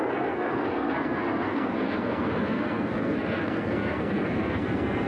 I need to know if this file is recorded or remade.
remade